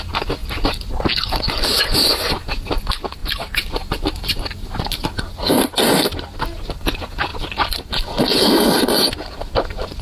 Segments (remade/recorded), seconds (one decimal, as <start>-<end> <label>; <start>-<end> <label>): 0.0-2.1 recorded; 2.1-2.7 remade; 2.7-3.2 recorded; 3.2-5.2 remade; 5.2-7.3 recorded; 7.3-8.8 remade; 8.8-10.0 recorded